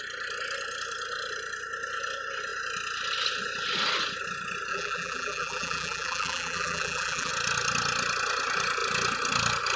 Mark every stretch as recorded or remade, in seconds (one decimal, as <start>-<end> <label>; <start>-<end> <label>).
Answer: 0.0-4.7 recorded; 4.7-7.3 remade; 7.3-9.8 recorded